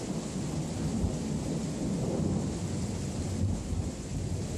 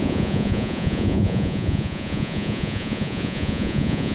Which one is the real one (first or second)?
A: first